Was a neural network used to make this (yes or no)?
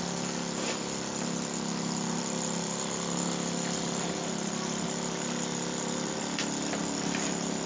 no